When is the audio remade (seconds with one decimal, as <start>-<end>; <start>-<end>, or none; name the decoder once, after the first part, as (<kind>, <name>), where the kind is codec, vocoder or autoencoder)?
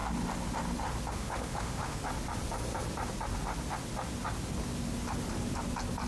1.1-2.0 (autoencoder, DAC-VAE)